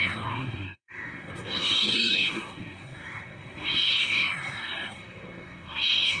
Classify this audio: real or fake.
fake